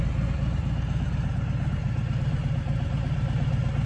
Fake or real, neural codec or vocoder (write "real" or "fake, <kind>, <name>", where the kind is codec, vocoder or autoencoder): real